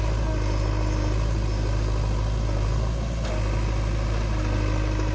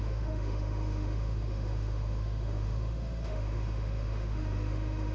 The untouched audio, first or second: first